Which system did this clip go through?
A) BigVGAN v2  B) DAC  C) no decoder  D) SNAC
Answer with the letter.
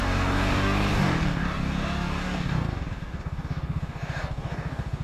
B